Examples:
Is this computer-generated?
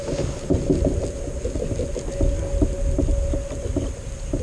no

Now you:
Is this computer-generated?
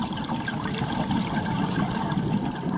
no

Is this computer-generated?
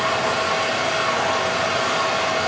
no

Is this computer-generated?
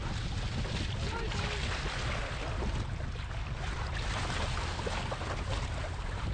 no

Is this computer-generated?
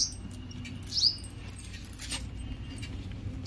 no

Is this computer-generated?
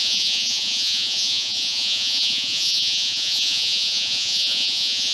yes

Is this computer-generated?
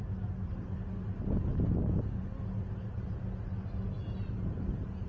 no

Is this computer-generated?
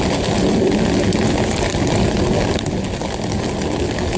no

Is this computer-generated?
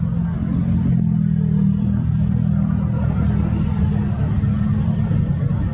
no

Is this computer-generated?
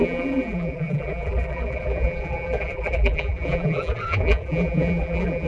yes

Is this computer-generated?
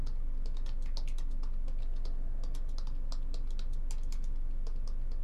no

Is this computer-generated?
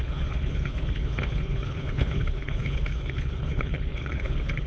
yes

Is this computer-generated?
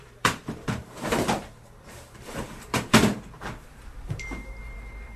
yes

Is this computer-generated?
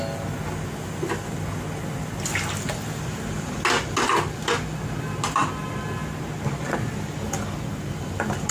no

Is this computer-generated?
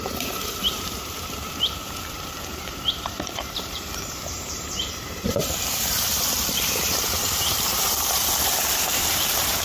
yes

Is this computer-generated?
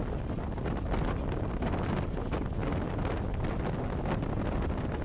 no